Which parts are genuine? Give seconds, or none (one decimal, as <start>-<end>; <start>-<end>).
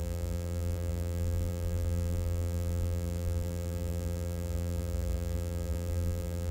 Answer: none